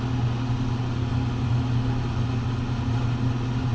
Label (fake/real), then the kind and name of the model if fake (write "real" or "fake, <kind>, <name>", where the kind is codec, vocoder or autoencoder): real